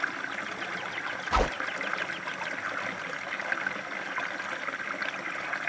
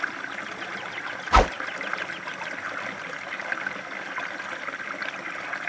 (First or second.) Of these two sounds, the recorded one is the first